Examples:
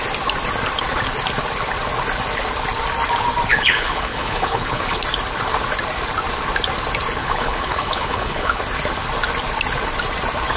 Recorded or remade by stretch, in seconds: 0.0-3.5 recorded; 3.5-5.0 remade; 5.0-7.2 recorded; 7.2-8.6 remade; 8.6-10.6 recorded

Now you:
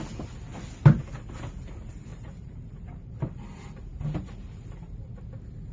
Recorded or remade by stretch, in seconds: 0.0-2.1 recorded; 2.1-3.2 remade; 3.2-3.9 recorded; 3.9-5.2 remade; 5.2-5.7 recorded

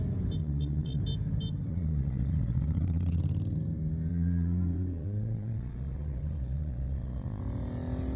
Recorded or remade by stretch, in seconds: 0.0-0.4 recorded; 0.4-1.0 remade; 1.0-1.7 recorded; 1.7-3.2 remade; 3.2-4.1 recorded; 4.1-7.4 remade; 7.4-8.2 recorded